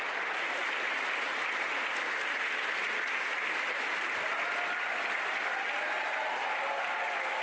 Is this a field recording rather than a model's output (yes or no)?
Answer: no